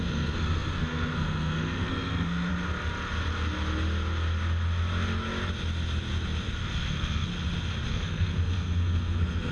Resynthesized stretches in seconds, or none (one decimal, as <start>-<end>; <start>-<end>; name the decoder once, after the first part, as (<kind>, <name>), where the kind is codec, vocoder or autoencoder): 0.0-2.5 (codec, SNAC); 6.4-7.3; 7.9-9.5